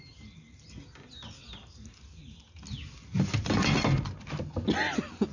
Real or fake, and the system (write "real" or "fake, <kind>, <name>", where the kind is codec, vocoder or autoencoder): real